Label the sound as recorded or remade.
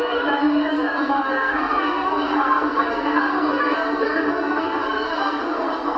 remade